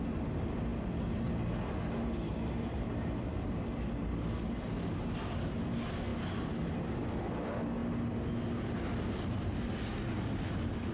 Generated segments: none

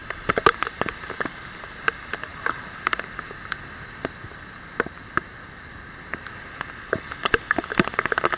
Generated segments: none

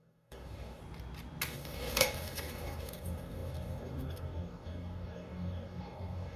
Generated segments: 0.0-0.8 (codec, DAC); 1.5-6.4